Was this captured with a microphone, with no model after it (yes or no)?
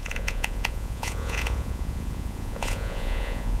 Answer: no